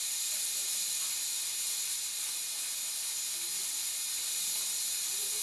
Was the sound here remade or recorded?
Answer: recorded